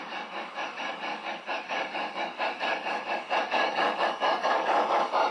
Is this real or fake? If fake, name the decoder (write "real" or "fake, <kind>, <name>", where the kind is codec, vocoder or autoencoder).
fake, codec, DAC